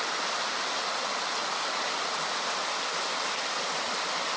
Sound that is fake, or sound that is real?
real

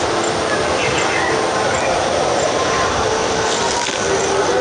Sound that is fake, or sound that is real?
real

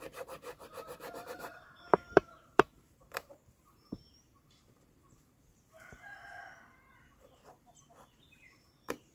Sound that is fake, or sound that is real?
fake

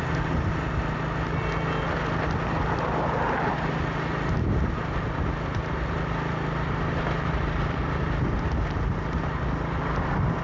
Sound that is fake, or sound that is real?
real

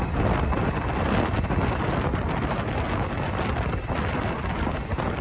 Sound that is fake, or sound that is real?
real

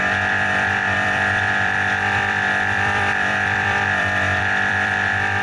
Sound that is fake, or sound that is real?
fake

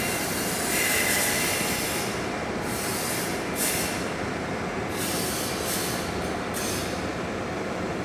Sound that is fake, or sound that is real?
real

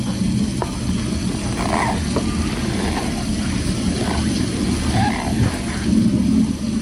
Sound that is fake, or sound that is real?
real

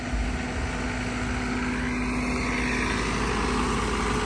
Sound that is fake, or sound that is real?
real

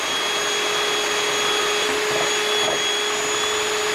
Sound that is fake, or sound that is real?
real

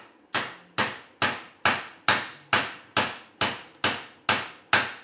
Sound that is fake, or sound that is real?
real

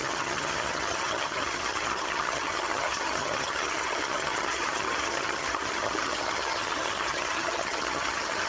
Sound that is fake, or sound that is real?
fake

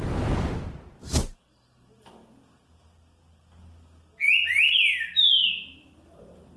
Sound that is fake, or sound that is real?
real